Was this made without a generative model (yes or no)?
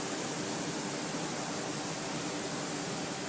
yes